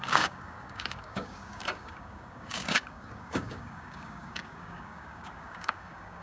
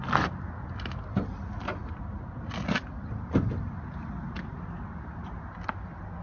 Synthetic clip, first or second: first